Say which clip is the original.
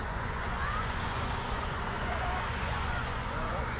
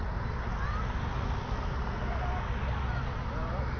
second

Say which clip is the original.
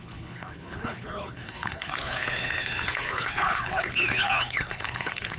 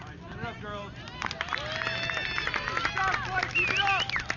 second